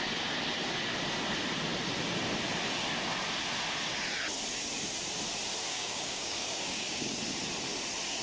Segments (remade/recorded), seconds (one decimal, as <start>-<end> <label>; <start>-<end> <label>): 0.0-5.7 recorded; 5.7-7.1 remade; 7.1-8.2 recorded